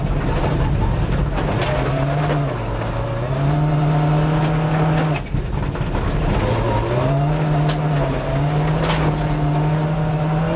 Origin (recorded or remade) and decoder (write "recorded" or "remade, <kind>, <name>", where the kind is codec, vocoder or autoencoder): recorded